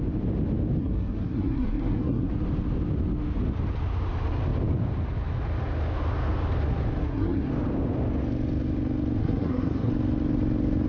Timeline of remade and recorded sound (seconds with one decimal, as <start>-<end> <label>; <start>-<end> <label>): 0.0-0.8 recorded; 0.8-2.3 remade; 2.3-7.0 recorded; 7.0-7.5 remade; 7.5-9.2 recorded; 9.2-9.9 remade; 9.9-10.9 recorded